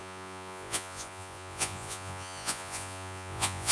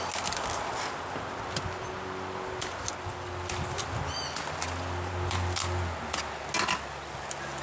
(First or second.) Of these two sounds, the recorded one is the second